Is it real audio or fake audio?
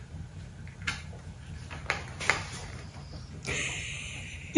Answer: fake